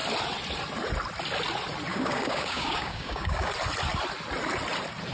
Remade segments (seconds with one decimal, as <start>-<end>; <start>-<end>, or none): 1.9-3.5